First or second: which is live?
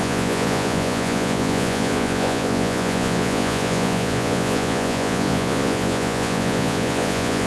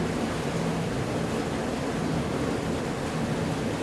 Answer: second